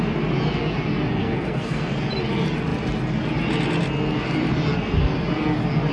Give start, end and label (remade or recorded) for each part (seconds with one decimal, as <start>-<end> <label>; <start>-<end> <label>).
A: 0.0-1.2 recorded; 1.2-1.9 remade; 1.9-5.9 recorded